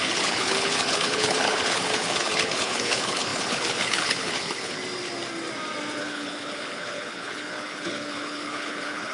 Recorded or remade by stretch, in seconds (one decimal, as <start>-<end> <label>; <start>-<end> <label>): 0.0-4.8 remade; 4.8-6.0 recorded; 6.0-9.1 remade

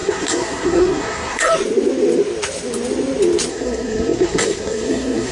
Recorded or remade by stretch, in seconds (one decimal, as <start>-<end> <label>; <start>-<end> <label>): 0.0-1.5 remade; 1.5-3.5 recorded; 3.5-5.3 remade

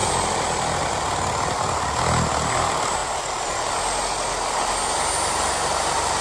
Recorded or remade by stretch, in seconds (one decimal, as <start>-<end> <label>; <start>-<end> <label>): 0.0-6.2 recorded

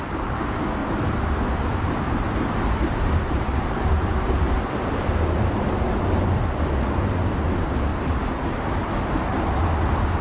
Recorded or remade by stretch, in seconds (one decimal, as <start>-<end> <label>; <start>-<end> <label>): 0.0-0.8 recorded; 0.8-4.9 remade; 4.9-7.9 recorded; 7.9-8.9 remade; 8.9-10.2 recorded